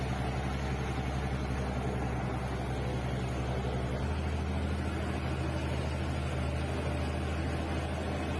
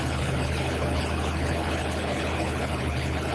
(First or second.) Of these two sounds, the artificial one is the second